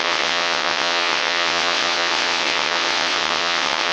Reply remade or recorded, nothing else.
remade